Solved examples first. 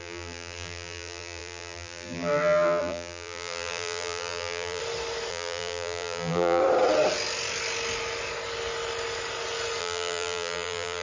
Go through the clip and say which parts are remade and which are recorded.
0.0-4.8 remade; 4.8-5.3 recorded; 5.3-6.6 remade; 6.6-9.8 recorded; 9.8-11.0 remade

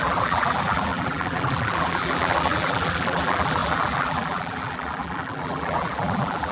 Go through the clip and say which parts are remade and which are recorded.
0.0-6.5 remade